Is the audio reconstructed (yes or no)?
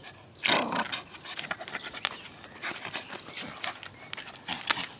no